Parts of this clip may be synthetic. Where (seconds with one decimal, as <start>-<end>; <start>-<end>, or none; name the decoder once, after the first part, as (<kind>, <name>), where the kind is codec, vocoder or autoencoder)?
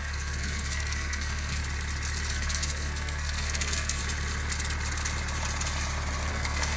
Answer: 0.0-1.6 (codec, SNAC); 2.3-4.0; 6.3-6.8